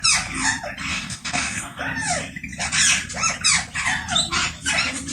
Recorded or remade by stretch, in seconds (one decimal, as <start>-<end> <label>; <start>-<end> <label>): 0.0-0.9 recorded; 0.9-1.8 remade; 1.8-5.1 recorded